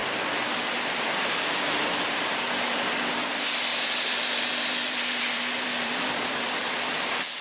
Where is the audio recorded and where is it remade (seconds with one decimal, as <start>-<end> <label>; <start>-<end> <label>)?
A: 0.0-2.7 recorded; 2.7-7.4 remade